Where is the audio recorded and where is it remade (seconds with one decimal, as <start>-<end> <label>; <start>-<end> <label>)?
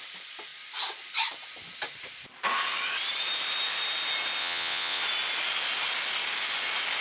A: 0.0-4.4 recorded; 4.4-5.0 remade; 5.0-7.0 recorded